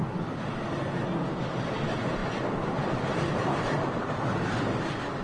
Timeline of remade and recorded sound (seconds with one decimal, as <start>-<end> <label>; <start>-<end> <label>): 0.0-5.2 recorded